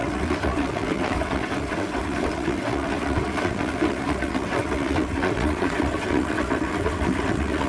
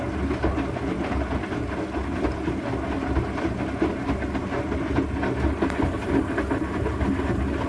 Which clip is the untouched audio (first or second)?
second